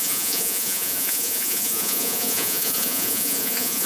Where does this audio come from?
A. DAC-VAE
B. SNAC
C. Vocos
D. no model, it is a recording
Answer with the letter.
C